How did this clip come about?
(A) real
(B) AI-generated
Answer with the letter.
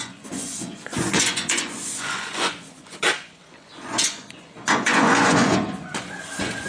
B